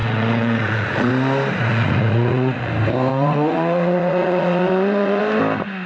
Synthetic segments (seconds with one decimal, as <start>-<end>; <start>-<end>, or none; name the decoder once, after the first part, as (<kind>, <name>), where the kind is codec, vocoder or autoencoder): 0.0-1.1 (vocoder, Vocos); 1.7-2.7; 3.1-5.2